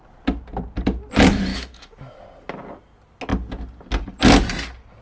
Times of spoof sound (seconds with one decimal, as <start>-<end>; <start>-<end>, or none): 1.5-2.2